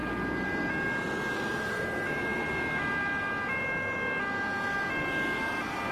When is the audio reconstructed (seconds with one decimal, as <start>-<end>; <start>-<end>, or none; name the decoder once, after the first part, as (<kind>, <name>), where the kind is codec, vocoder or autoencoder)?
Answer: 1.3-2.3 (vocoder, BigVGAN v2)